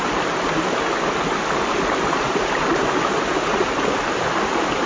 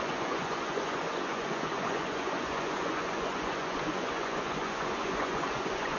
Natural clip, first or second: first